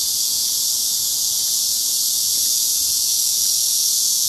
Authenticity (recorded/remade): remade